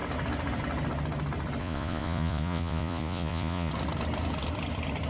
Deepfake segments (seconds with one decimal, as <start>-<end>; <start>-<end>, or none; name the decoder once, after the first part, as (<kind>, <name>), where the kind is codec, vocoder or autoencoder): 1.6-3.7 (vocoder, Vocos)